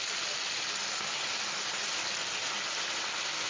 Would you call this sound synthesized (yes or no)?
no